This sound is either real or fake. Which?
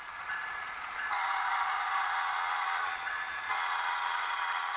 fake